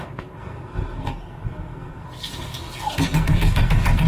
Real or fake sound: fake